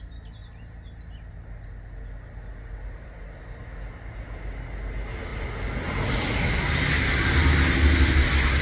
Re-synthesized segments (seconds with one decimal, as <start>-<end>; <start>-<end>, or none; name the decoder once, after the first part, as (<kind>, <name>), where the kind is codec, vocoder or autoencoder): none